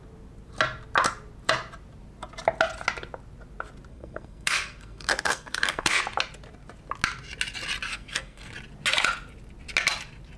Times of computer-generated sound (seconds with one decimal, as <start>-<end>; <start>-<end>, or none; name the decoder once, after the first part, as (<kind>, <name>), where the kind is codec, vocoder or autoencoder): 3.9-6.0 (codec, SNAC); 7.9-8.5